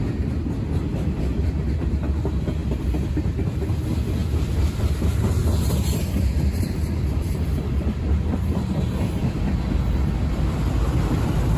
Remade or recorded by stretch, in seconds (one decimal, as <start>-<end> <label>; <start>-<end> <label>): 0.0-5.4 recorded; 5.4-8.6 remade; 8.6-11.6 recorded